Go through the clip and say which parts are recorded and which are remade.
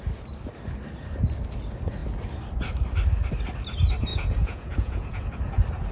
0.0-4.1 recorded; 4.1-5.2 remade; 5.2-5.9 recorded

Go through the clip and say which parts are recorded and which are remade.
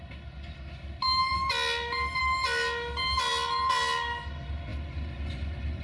0.0-5.8 recorded